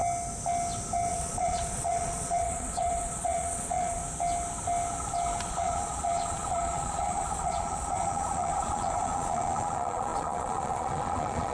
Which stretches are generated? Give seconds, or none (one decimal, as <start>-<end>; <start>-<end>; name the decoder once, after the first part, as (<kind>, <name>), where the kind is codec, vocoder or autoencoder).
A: 1.1-4.0 (vocoder, Vocos); 5.5-11.5